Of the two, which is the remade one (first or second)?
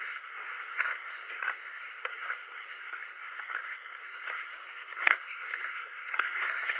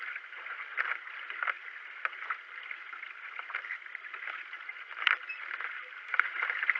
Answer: first